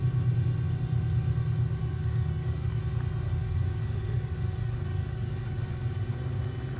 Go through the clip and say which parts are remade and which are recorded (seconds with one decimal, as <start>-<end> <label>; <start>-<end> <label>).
0.0-1.8 recorded; 1.8-2.8 remade; 2.8-3.4 recorded; 3.4-6.0 remade; 6.0-6.8 recorded